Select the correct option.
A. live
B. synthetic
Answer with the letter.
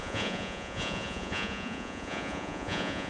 B